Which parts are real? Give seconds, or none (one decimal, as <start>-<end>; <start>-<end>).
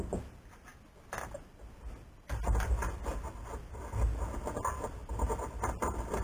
0.0-6.2